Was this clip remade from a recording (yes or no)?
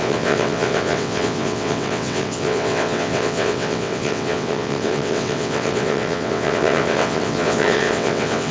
yes